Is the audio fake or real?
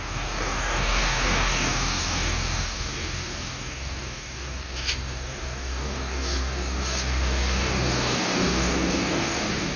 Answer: fake